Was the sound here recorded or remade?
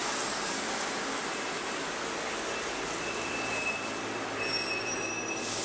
recorded